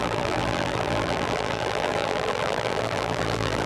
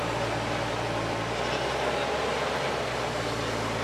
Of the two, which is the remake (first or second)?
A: first